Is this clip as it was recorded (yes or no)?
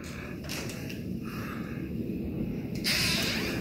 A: no